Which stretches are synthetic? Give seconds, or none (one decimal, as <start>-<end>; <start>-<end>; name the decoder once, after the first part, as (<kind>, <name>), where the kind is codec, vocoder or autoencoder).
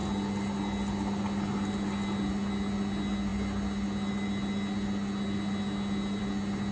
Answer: none